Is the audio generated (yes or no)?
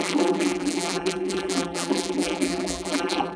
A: yes